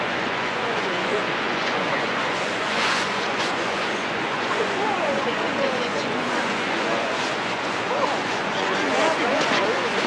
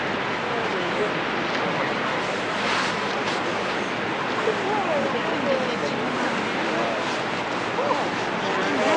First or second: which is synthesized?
first